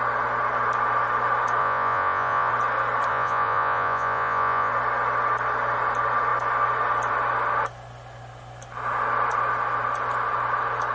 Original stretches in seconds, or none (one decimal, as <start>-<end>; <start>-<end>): 0.0-1.6; 2.5-3.1; 4.7-10.9